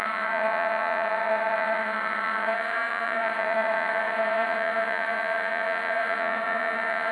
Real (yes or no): no